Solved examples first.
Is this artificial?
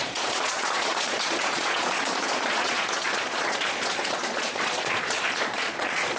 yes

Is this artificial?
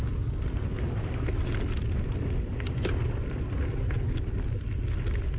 no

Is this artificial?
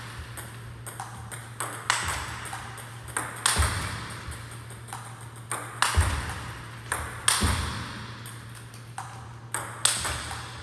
no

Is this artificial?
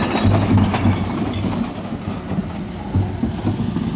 no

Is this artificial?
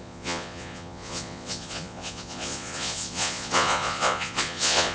yes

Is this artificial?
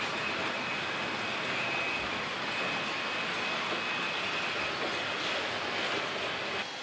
no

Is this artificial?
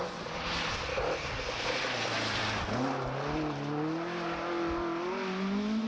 no